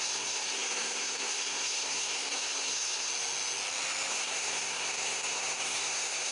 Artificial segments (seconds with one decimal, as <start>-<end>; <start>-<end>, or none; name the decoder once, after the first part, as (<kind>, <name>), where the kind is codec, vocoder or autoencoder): 0.0-3.1 (codec, SNAC); 4.1-6.3

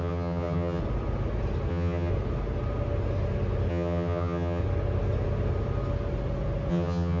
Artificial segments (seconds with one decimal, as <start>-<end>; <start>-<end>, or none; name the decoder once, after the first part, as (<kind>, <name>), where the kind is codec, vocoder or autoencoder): 0.0-0.8 (vocoder, HiFi-GAN); 1.7-2.1; 3.7-4.6; 6.7-7.2